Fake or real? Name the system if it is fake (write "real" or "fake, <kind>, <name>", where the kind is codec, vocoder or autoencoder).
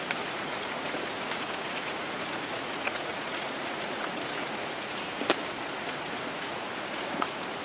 fake, vocoder, Vocos